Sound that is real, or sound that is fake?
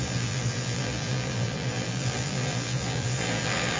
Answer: fake